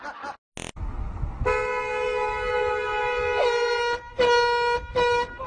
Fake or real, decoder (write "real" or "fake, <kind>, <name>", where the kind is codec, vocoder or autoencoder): real